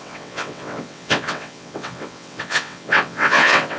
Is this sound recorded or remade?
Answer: remade